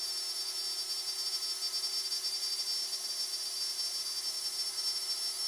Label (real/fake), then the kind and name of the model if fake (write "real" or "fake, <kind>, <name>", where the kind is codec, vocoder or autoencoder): real